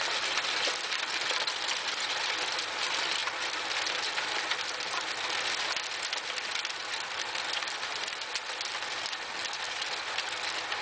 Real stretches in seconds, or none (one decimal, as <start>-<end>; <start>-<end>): 0.0-10.8